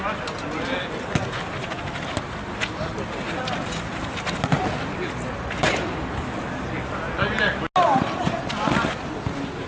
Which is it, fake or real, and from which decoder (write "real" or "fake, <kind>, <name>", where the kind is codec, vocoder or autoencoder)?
real